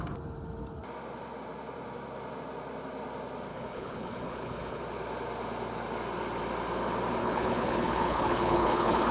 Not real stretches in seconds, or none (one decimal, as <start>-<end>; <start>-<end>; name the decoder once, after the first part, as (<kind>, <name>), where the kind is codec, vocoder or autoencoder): 3.5-4.8 (codec, HILCodec); 7.2-9.1